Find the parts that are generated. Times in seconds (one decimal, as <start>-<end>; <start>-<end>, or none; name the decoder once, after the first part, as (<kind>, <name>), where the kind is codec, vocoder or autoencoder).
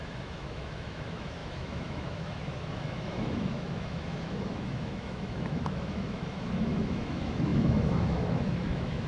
0.0-9.1 (autoencoder, DAC-VAE)